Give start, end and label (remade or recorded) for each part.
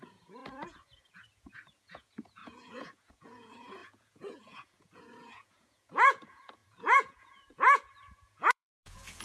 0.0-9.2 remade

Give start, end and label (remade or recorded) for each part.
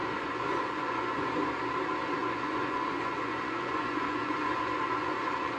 0.0-1.3 remade; 1.3-2.2 recorded; 2.2-5.6 remade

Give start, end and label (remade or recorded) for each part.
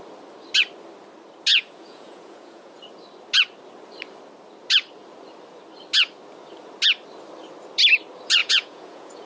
0.0-1.5 recorded; 1.5-2.8 remade; 2.8-8.4 recorded; 8.4-9.3 remade